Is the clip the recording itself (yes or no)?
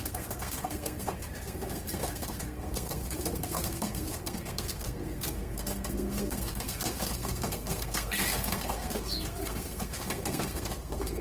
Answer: no